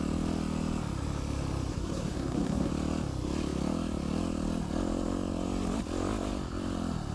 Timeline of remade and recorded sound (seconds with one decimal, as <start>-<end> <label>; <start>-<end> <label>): 0.0-1.7 recorded; 1.7-2.7 remade; 2.7-7.1 recorded